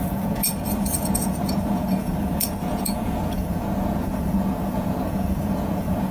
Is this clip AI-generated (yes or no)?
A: yes